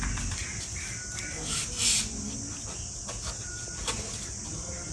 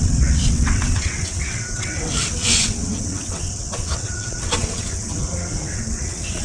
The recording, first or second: first